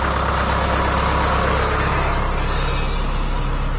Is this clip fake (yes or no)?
no